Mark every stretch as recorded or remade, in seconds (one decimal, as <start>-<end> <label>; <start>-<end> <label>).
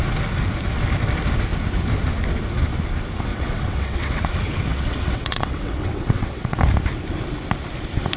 0.0-3.3 recorded; 3.3-4.3 remade; 4.3-4.7 recorded; 4.7-6.6 remade; 6.6-8.2 recorded